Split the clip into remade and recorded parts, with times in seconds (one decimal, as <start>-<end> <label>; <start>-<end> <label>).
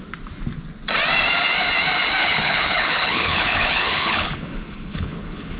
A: 0.0-2.2 recorded; 2.2-5.6 remade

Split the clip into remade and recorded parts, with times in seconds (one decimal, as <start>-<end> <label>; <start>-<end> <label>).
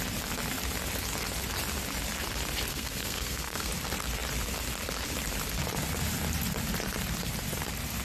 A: 0.0-2.7 recorded; 2.7-3.7 remade; 3.7-8.0 recorded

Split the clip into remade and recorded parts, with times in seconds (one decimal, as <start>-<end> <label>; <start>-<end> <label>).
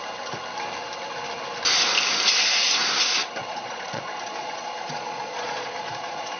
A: 0.0-3.4 recorded; 3.4-6.4 remade